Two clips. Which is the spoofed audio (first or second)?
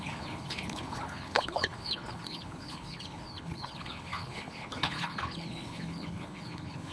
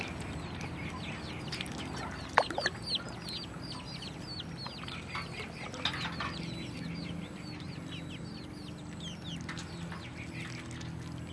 first